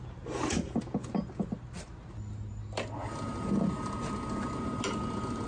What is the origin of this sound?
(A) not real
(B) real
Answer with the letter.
B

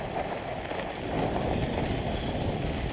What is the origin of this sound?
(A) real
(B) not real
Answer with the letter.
A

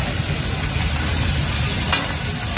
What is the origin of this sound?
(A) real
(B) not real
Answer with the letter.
A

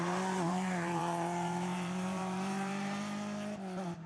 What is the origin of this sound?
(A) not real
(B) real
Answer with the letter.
A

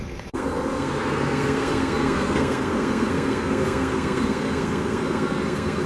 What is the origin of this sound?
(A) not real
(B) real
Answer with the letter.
A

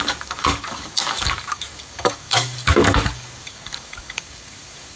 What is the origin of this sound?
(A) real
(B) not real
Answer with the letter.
B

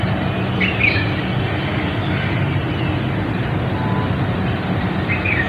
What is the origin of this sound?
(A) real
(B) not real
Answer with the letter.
A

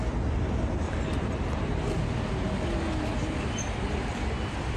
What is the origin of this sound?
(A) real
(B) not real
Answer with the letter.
A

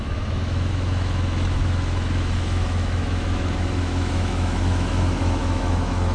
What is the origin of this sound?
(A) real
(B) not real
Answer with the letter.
B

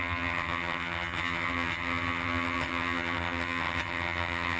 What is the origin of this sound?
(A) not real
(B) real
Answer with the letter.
A